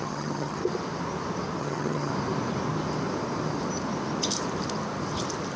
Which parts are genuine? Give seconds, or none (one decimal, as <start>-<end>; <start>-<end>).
0.6-1.6; 2.1-5.6